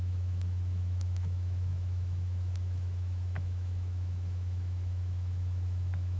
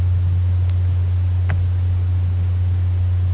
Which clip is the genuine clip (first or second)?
second